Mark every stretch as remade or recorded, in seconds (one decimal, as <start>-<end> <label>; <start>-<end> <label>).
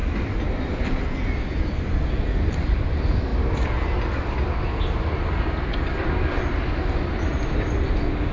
0.0-8.3 recorded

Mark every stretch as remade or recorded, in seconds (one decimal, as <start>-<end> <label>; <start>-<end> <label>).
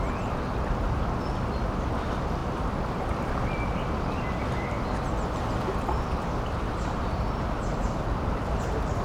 0.0-9.0 recorded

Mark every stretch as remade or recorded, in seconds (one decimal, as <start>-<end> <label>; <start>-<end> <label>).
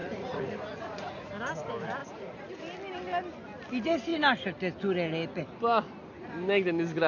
0.0-1.3 remade; 1.3-2.0 recorded; 2.0-2.6 remade; 2.6-7.1 recorded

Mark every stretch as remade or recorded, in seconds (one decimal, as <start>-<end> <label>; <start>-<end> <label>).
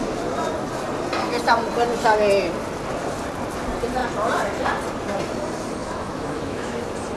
0.0-5.8 recorded; 5.8-6.8 remade; 6.8-7.2 recorded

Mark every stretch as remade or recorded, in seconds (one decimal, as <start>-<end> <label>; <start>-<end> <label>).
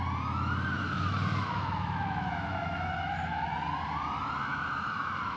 0.0-0.8 recorded; 0.8-3.5 remade; 3.5-4.4 recorded; 4.4-5.4 remade